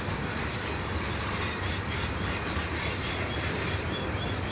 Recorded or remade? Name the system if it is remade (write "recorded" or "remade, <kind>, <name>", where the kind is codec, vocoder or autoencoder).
recorded